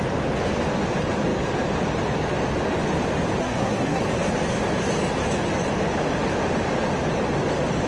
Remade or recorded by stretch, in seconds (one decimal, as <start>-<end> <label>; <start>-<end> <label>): 0.0-3.4 recorded; 3.4-4.0 remade; 4.0-7.9 recorded

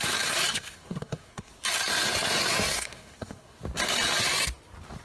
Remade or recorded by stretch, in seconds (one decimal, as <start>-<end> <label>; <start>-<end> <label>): 0.0-0.5 recorded; 0.5-1.5 remade; 1.5-2.7 recorded; 2.7-3.6 remade; 3.6-5.0 recorded

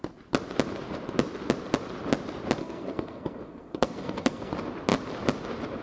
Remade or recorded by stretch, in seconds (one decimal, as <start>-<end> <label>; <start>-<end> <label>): 0.0-2.6 recorded; 2.6-4.5 remade; 4.5-5.8 recorded

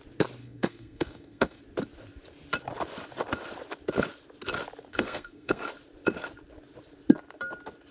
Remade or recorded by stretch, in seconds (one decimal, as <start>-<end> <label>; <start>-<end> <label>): 0.0-0.4 recorded; 0.4-1.6 remade; 1.6-4.9 recorded; 4.9-5.7 remade; 5.7-7.9 recorded

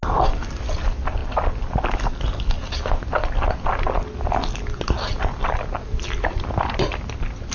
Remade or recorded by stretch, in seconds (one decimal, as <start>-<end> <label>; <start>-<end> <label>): 0.0-7.5 recorded

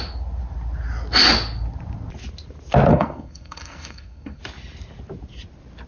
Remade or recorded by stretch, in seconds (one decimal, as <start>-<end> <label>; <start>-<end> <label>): 0.0-2.9 recorded; 2.9-4.4 remade; 4.4-5.9 recorded

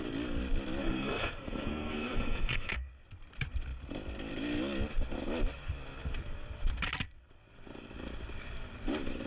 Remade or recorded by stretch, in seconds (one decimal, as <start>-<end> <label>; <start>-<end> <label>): 0.0-0.8 recorded; 0.8-2.9 remade; 2.9-9.3 recorded

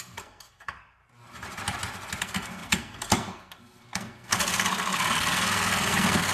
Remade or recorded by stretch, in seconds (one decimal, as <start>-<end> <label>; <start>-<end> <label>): 0.0-1.0 remade; 1.0-2.2 recorded; 2.2-6.3 remade